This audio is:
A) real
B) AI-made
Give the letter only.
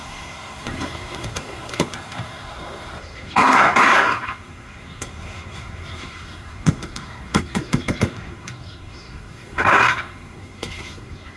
B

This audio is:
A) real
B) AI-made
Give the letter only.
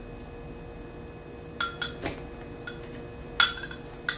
A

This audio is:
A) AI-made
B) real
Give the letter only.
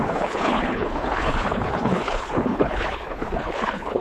A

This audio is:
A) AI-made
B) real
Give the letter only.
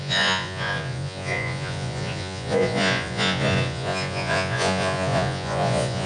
A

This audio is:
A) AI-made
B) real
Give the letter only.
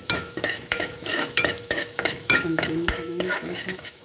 A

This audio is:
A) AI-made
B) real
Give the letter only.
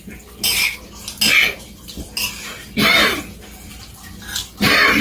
B